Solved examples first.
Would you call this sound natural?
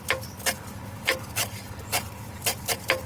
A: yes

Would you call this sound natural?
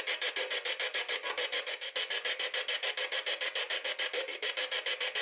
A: yes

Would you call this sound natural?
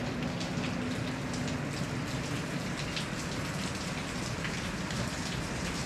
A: yes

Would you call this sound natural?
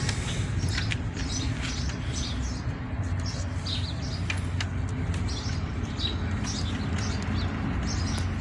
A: yes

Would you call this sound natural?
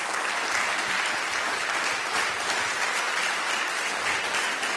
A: yes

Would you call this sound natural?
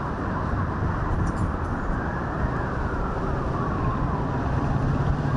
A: yes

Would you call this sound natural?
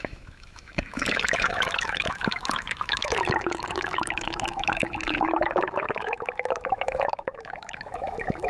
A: no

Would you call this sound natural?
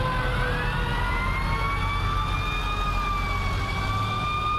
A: yes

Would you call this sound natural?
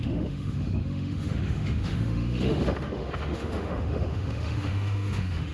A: no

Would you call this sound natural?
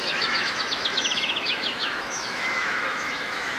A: no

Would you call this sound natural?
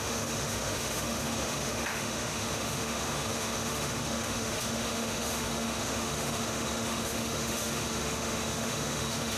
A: no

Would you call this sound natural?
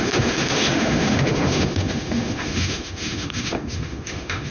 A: no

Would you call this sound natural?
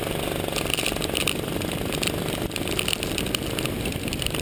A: yes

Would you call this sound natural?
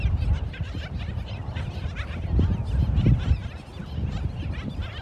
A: yes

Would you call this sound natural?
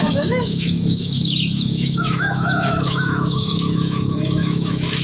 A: no